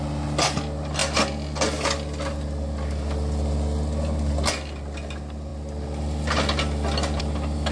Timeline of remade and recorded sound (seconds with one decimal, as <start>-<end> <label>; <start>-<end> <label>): 0.0-7.7 recorded